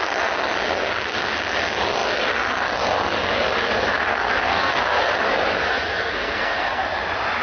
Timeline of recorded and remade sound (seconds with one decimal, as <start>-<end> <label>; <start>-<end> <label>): 0.0-4.1 recorded; 4.1-5.1 remade; 5.1-5.7 recorded; 5.7-6.8 remade; 6.8-7.4 recorded